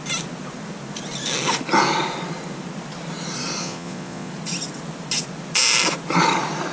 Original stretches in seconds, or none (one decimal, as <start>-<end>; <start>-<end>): 0.0-3.6; 4.3-6.7